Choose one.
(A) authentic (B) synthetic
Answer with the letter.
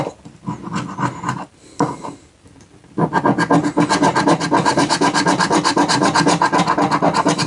A